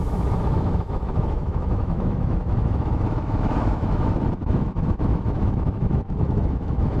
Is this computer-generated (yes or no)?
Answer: yes